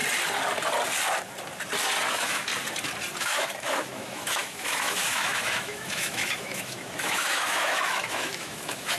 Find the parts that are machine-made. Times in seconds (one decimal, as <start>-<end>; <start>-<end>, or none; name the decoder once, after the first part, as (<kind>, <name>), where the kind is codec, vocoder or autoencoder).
2.1-2.5 (autoencoder, DAC-VAE); 3.2-9.0